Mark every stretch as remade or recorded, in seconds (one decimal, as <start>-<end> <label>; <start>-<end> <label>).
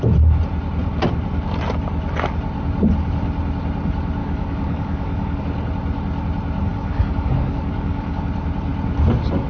0.0-4.2 recorded; 4.2-5.4 remade; 5.4-6.7 recorded; 6.7-8.2 remade; 8.2-9.5 recorded